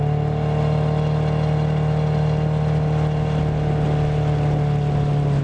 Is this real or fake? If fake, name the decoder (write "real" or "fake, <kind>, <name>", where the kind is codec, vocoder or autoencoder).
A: real